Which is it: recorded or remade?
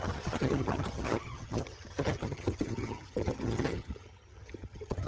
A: remade